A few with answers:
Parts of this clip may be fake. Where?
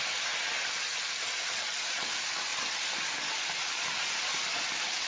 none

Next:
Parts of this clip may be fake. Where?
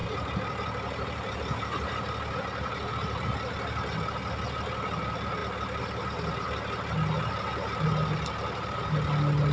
none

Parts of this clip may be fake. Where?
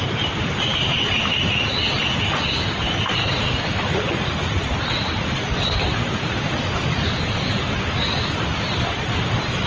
3.2-3.9 (autoencoder, DAC-VAE)